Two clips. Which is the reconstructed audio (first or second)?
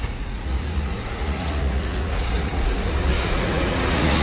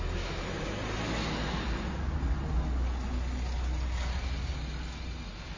first